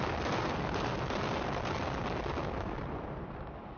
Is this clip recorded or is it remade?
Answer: recorded